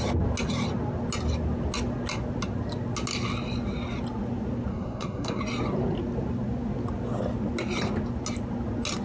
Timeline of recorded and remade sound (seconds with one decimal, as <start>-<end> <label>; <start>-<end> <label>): 0.0-4.7 recorded; 4.7-5.4 remade; 5.4-9.0 recorded